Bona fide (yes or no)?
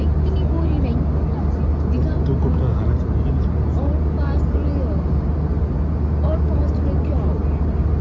yes